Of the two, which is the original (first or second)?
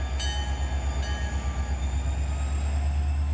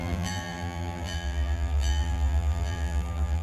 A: first